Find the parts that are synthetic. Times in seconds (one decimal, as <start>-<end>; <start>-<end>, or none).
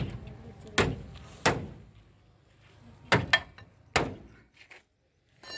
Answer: none